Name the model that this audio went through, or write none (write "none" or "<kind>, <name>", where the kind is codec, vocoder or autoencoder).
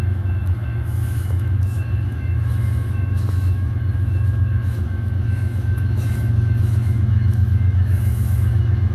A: autoencoder, DAC-VAE